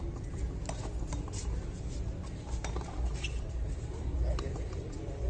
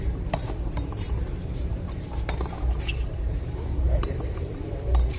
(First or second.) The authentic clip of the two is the first